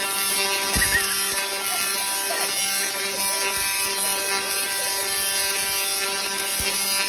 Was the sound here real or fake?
real